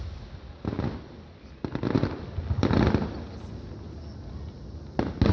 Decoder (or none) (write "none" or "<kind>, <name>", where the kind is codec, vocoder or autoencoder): none